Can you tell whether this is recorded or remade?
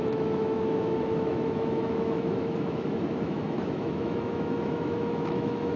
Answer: remade